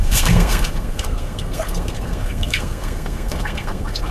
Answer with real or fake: fake